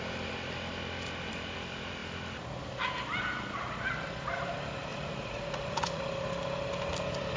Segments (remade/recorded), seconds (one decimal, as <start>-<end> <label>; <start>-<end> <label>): 0.0-4.9 recorded; 4.9-6.0 remade; 6.0-7.4 recorded